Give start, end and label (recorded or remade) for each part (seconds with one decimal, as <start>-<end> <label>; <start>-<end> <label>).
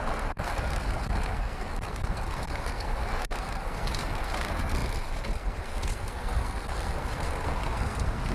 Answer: 0.0-8.3 remade